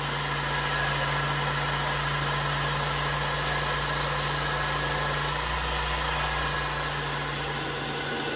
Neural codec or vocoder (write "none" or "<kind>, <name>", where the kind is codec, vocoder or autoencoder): none